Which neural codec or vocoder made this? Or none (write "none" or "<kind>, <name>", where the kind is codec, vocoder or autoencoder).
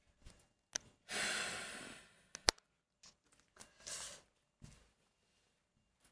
none